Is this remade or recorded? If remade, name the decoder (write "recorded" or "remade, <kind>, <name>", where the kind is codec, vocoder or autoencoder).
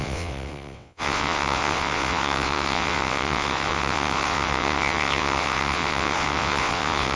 remade, vocoder, WaveNeXt